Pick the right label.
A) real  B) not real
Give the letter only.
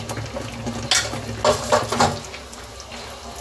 A